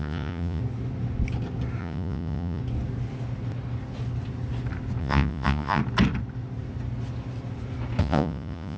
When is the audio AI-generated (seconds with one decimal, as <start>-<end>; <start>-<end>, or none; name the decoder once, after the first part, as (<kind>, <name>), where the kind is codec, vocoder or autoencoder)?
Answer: 0.0-0.6 (vocoder, Vocos); 1.8-2.6; 5.0-5.8; 8.0-8.8